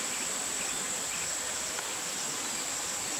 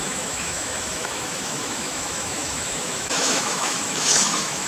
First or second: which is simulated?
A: second